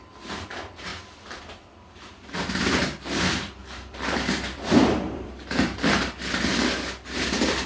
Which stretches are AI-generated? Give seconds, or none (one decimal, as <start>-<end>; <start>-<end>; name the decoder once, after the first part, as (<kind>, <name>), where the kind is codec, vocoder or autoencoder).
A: 0.9-1.4 (vocoder, BigVGAN v2); 3.6-5.9